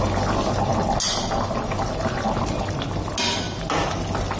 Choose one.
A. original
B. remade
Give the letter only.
A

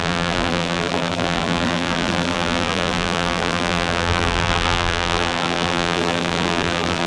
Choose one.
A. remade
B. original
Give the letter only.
A